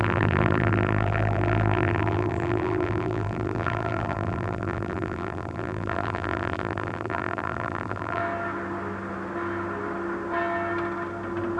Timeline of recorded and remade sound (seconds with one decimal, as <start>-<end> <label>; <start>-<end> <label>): 0.0-8.2 remade; 8.2-11.6 recorded